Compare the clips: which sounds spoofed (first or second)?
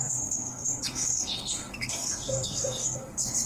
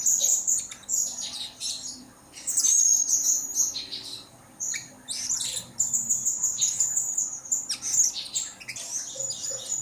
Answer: first